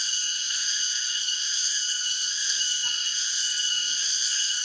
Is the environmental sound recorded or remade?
remade